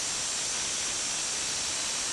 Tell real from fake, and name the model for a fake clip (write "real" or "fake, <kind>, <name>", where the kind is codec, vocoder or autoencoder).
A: real